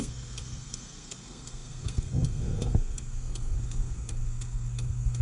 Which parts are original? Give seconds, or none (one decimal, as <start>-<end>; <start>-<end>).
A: none